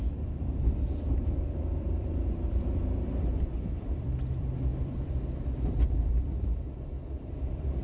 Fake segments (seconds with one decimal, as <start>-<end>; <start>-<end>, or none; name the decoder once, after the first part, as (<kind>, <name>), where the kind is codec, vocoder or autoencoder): 0.0-7.8 (vocoder, BigVGAN v2)